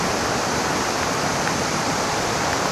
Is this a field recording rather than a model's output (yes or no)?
no